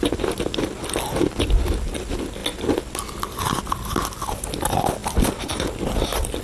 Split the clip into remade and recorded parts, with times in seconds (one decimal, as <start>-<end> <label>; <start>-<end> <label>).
0.0-6.4 recorded